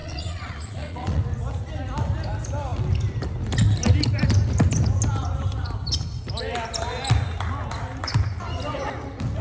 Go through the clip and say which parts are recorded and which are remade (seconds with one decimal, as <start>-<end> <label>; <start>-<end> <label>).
0.0-1.2 remade; 1.2-9.4 recorded